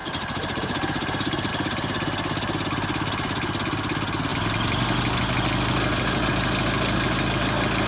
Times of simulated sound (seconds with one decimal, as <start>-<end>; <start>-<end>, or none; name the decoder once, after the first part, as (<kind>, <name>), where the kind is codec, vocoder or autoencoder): 0.0-1.5 (vocoder, BigVGAN v2)